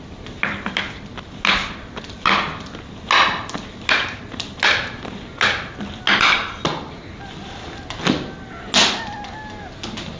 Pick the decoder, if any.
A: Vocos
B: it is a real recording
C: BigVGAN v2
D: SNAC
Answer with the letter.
B